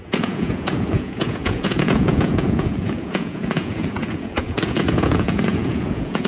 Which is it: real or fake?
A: fake